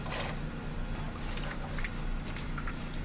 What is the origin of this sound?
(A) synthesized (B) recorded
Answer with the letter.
B